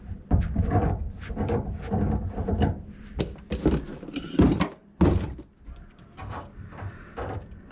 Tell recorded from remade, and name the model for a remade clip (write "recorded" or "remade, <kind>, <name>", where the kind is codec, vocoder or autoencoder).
remade, vocoder, BigVGAN v2